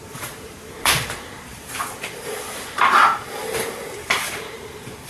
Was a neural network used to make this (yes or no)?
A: yes